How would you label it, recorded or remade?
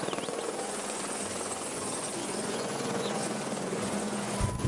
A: remade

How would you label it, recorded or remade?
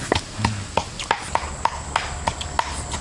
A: recorded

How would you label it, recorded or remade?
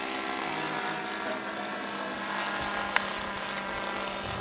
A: recorded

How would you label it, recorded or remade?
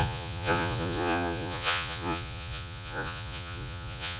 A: remade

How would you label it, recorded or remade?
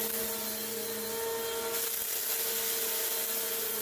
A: recorded